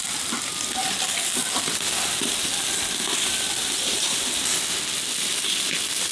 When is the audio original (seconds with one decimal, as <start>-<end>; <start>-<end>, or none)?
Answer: 0.0-6.1